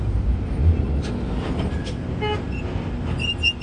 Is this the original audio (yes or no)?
yes